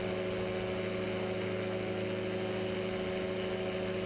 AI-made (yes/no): no